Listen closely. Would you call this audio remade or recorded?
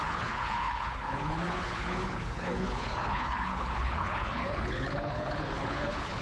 remade